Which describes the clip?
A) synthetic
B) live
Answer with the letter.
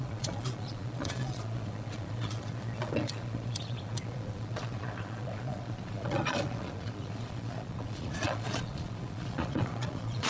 A